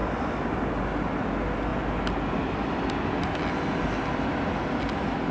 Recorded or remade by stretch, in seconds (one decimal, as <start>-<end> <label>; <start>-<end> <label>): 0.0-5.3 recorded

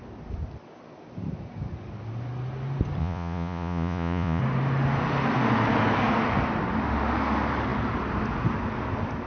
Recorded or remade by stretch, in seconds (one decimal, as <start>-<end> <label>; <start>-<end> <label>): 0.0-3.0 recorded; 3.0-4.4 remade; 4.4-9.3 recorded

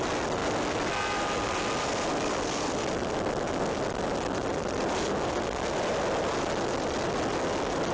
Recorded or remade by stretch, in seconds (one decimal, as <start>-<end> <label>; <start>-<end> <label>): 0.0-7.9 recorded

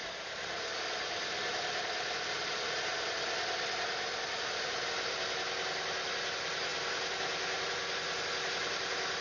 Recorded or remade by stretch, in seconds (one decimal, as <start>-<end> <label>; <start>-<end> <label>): 0.0-9.2 recorded

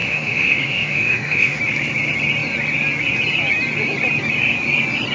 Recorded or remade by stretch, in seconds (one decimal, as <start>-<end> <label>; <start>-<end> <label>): 0.0-1.6 remade; 1.6-5.1 recorded